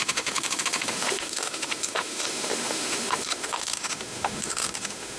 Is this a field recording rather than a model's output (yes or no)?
no